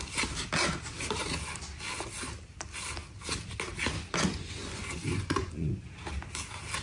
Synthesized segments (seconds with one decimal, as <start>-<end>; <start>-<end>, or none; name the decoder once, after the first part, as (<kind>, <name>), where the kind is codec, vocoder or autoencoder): 4.6-5.9 (vocoder, Vocos)